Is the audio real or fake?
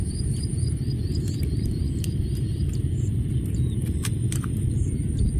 fake